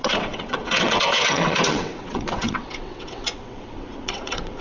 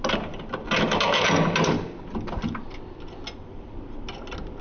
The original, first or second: second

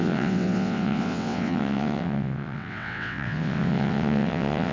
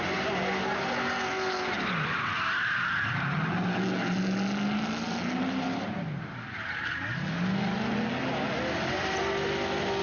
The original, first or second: second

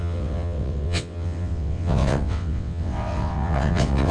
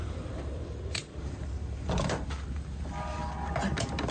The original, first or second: second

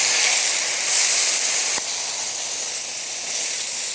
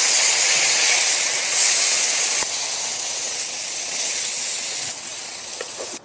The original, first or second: first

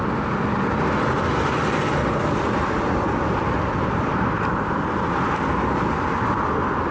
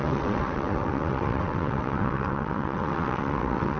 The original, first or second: first